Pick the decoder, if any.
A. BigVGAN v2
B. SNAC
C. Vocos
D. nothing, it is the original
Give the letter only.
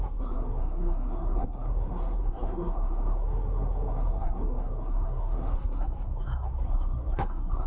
B